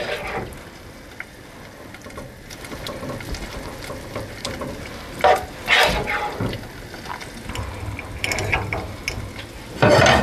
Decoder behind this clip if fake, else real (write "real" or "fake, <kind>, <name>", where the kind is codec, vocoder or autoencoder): real